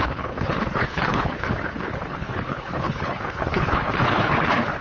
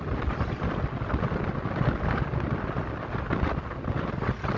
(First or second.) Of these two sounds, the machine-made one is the first